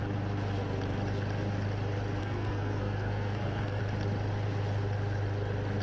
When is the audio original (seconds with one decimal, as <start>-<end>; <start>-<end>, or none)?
0.0-2.2; 3.8-5.8